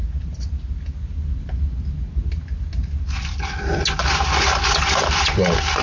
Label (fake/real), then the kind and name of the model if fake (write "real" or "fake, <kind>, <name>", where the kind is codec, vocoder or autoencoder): real